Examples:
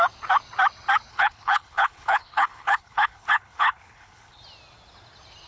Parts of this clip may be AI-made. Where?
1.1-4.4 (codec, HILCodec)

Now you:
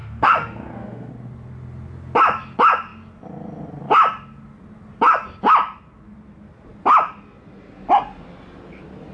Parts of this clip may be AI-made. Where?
0.0-1.1 (autoencoder, DAC-VAE)